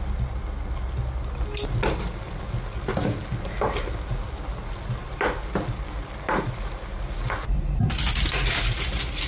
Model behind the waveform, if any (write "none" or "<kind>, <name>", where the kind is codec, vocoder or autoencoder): none